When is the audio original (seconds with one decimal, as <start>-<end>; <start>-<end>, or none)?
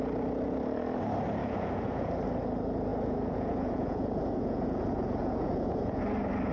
0.0-1.4; 2.1-2.9; 6.0-6.5